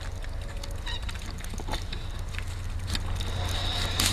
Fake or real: real